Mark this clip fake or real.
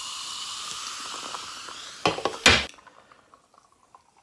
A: real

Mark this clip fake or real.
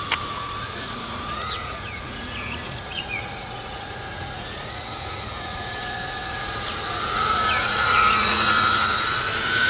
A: fake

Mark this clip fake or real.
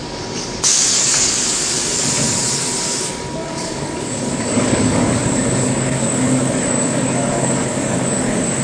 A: fake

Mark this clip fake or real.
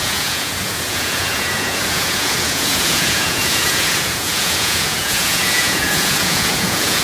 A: fake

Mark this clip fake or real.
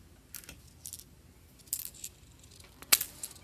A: real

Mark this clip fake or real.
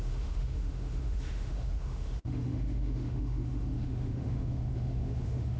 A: fake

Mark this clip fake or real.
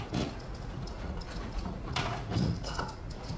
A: fake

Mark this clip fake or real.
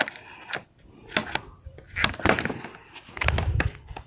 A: real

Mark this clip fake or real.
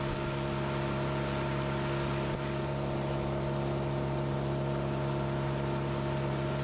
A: real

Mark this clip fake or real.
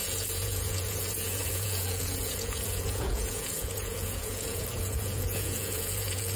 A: fake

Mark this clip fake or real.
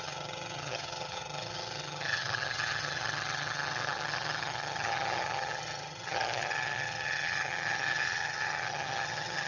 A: fake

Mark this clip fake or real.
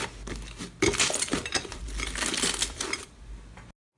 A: real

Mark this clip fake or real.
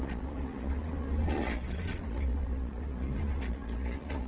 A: fake